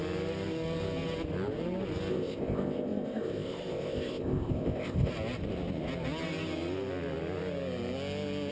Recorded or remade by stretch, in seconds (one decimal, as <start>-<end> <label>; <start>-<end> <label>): 0.0-2.1 recorded; 2.1-5.1 remade; 5.1-8.5 recorded